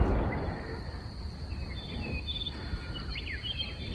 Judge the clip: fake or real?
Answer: real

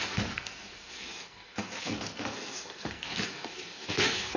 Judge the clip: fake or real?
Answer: fake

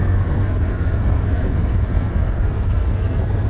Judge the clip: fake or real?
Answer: fake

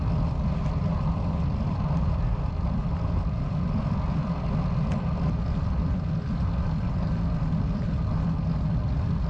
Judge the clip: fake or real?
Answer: real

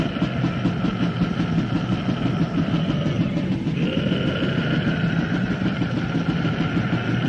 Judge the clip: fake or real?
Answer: real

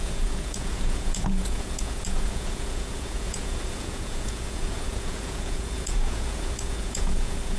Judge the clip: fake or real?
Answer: fake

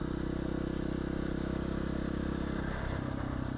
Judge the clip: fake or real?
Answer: real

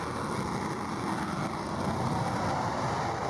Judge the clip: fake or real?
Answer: real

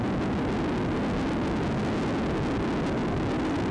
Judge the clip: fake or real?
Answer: real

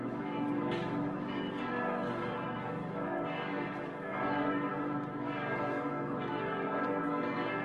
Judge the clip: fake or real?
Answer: fake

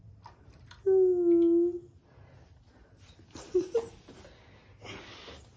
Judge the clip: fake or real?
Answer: real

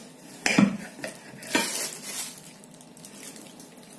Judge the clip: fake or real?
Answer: real